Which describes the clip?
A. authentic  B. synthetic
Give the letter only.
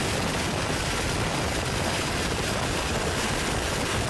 A